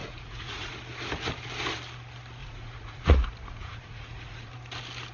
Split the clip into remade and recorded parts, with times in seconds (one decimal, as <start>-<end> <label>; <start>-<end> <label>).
0.0-0.7 remade; 0.7-2.4 recorded; 2.4-4.5 remade; 4.5-5.1 recorded